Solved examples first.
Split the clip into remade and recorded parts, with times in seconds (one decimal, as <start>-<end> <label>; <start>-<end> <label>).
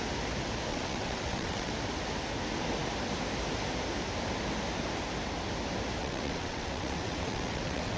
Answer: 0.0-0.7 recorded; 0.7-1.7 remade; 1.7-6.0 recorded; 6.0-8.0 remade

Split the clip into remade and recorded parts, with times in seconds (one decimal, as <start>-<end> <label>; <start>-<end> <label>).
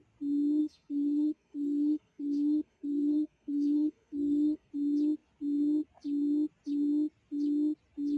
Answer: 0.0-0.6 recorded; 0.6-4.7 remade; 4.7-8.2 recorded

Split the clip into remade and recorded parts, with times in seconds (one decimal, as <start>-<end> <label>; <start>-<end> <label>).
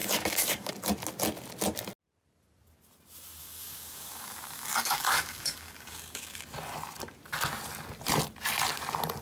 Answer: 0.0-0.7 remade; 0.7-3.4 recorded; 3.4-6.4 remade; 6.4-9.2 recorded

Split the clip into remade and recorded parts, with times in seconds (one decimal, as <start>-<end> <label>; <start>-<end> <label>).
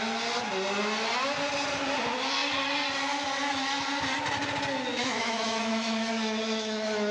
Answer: 0.0-4.9 recorded; 4.9-7.1 remade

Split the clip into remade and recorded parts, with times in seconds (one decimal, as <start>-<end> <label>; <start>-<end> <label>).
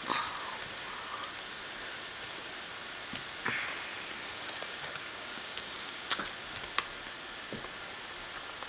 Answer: 0.0-4.3 recorded; 4.3-6.2 remade; 6.2-8.7 recorded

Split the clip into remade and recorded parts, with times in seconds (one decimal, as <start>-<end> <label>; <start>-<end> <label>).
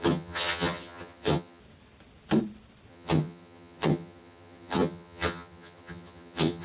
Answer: 0.0-1.6 remade; 1.6-2.9 recorded; 2.9-6.6 remade